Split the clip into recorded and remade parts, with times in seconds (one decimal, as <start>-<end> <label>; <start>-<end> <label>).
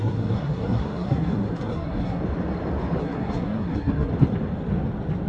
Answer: 0.0-2.2 remade; 2.2-3.0 recorded; 3.0-4.1 remade; 4.1-5.3 recorded